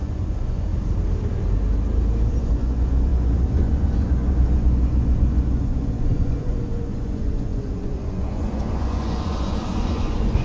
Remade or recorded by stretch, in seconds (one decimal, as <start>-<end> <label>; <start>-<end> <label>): 0.0-0.7 remade; 0.7-2.4 recorded; 2.4-10.4 remade

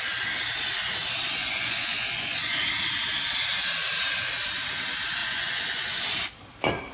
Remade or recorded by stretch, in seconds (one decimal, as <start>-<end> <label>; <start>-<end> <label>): 0.0-1.4 recorded; 1.4-2.7 remade; 2.7-5.2 recorded; 5.2-6.3 remade; 6.3-6.9 recorded

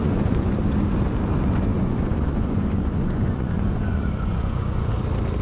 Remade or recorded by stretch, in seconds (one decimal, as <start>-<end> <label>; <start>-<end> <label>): 0.0-0.6 remade; 0.6-1.7 recorded; 1.7-4.9 remade; 4.9-5.4 recorded

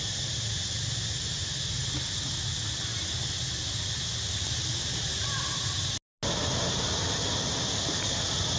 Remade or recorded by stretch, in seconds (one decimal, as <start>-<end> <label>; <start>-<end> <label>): 0.0-8.6 recorded

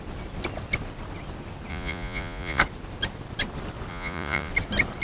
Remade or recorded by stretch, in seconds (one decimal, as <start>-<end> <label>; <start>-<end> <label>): 0.0-1.7 recorded; 1.7-2.6 remade; 2.6-3.9 recorded; 3.9-4.5 remade; 4.5-5.0 recorded

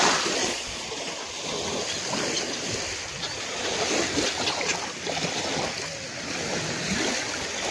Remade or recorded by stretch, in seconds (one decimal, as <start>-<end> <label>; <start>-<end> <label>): 0.0-0.4 recorded; 0.4-1.1 remade; 1.1-7.7 recorded

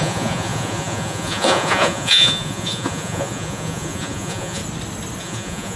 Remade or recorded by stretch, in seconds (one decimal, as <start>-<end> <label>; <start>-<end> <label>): 0.0-4.6 remade; 4.6-5.2 recorded; 5.2-5.8 remade

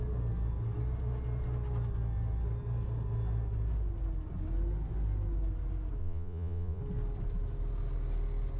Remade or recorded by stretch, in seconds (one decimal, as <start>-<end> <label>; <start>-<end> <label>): 0.0-6.0 recorded; 6.0-6.8 remade; 6.8-8.6 recorded